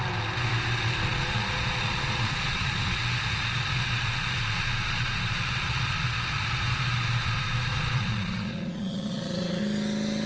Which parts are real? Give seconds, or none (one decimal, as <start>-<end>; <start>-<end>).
0.0-1.1; 3.0-7.7; 9.6-10.3